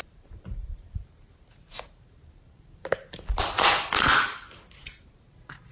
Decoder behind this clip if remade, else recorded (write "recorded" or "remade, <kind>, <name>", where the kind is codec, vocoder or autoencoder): remade, vocoder, BigVGAN v2